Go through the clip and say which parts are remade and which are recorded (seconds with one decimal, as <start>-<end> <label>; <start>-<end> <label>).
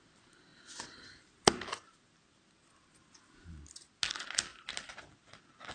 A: 0.0-5.7 recorded